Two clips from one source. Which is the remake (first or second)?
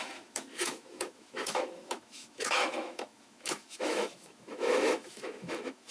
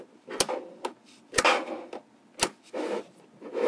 first